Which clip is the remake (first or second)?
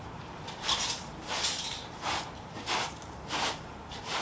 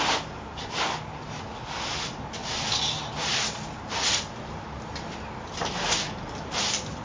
first